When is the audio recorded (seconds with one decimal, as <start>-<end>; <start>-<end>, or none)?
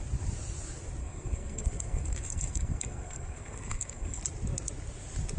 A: 0.0-1.0; 4.2-5.4